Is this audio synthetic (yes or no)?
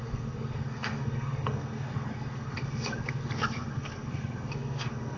yes